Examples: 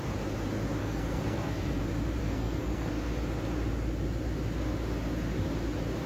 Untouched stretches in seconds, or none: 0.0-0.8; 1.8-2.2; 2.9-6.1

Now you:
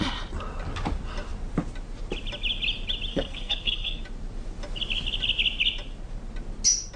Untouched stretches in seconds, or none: 0.0-3.1; 4.0-7.0

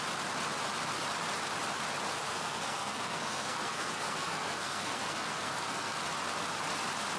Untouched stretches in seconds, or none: 0.0-2.2; 6.0-7.2

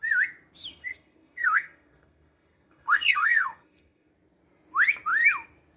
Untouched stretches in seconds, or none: 0.0-0.7; 4.1-5.8

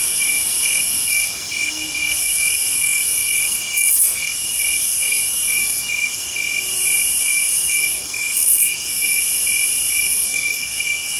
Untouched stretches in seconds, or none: 6.4-7.2; 9.3-9.9

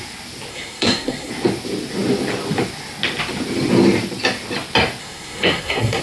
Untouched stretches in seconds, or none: 0.0-0.5; 1.3-5.0

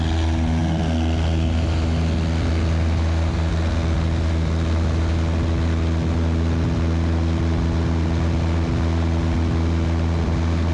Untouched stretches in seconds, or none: 0.0-10.7

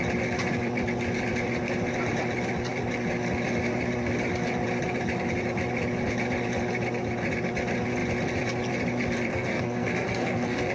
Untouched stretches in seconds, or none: 0.0-9.3